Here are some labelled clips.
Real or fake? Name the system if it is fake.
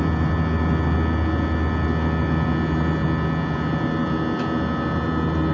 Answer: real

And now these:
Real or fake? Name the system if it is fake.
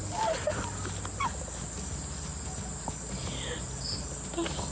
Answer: real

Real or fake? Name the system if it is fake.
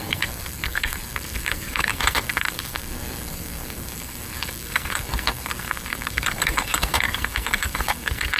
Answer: fake, codec, SNAC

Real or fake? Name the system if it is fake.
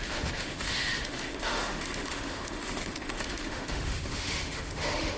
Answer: fake, autoencoder, DAC-VAE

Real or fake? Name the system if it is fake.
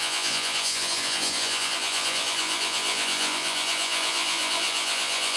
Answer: fake, vocoder, Vocos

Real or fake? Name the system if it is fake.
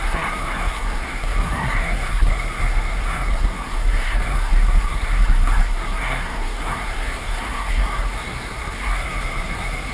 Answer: fake, codec, SNAC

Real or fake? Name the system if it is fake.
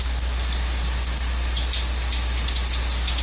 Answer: real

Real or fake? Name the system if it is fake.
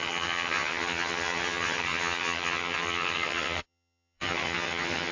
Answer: fake, vocoder, HiFi-GAN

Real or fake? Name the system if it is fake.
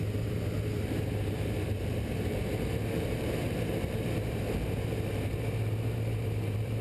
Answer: fake, vocoder, BigVGAN v2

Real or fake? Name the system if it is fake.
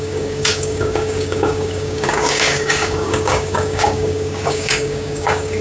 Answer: fake, codec, DAC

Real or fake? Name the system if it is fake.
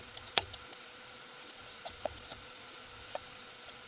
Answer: fake, vocoder, Vocos